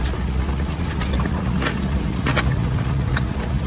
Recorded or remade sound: remade